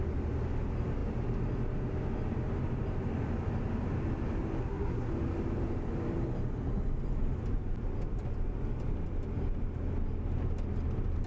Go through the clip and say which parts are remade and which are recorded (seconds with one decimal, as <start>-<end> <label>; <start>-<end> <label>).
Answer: 0.0-4.6 recorded; 4.6-5.1 remade; 5.1-11.3 recorded